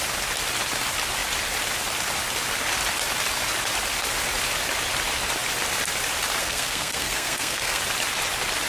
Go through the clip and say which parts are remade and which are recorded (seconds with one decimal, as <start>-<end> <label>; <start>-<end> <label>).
0.0-6.4 recorded; 6.4-7.8 remade; 7.8-8.7 recorded